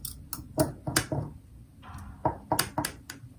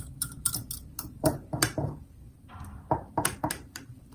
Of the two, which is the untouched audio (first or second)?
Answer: first